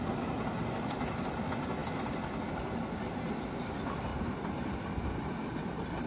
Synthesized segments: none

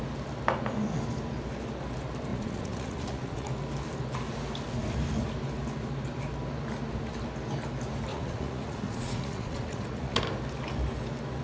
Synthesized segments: 2.3-3.5 (vocoder, Vocos); 8.1-10.2

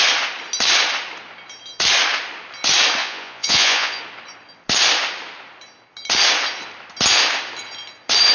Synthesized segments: 3.0-4.0 (vocoder, Vocos)

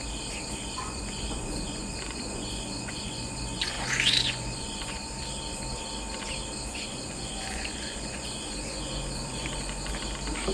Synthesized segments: 0.6-5.1 (vocoder, Vocos); 6.7-9.9

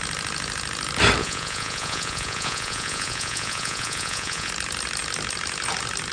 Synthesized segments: 1.2-4.5 (vocoder, Vocos)

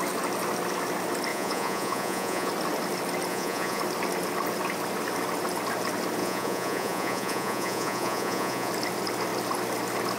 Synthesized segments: 1.3-2.5 (vocoder, Vocos); 3.3-3.8; 6.2-8.7

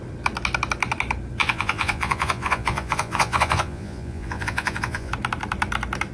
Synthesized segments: 1.4-5.1 (vocoder, Vocos)